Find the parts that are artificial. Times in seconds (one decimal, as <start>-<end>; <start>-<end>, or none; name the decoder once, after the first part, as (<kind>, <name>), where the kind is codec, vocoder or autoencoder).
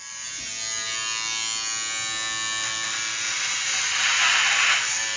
0.0-0.5 (vocoder, BigVGAN v2); 3.3-5.2